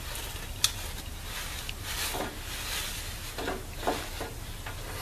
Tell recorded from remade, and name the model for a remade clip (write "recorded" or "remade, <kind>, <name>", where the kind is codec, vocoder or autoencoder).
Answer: recorded